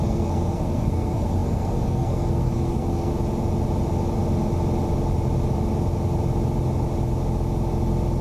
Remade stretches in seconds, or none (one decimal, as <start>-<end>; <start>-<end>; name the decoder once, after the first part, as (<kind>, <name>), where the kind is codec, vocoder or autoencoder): 0.0-3.1 (codec, SNAC)